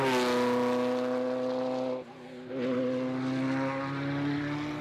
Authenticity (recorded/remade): recorded